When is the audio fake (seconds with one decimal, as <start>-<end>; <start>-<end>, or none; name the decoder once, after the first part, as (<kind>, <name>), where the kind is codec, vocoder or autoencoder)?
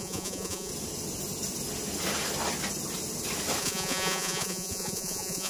0.0-0.7 (vocoder, Vocos); 3.6-5.5